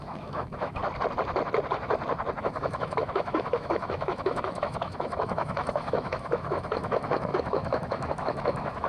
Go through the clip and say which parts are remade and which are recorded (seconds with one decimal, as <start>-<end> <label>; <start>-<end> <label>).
0.0-0.8 remade; 0.8-2.4 recorded; 2.4-8.9 remade